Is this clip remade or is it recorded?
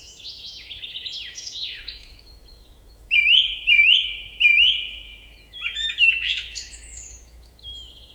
remade